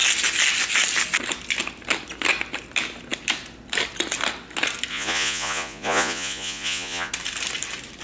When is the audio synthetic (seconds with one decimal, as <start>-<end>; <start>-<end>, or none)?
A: 4.9-7.1